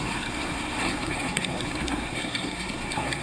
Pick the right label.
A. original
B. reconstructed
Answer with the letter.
B